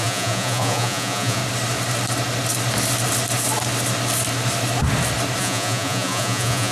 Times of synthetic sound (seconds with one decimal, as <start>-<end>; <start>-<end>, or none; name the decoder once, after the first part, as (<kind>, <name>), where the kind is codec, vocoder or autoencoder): 0.0-1.4 (vocoder, Vocos); 5.4-6.7